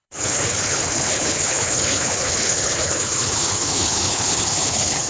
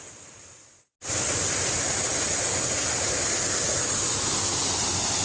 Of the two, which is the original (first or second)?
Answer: second